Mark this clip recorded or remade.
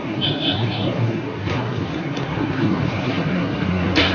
remade